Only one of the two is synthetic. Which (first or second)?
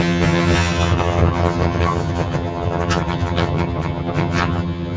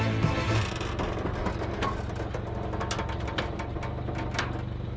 first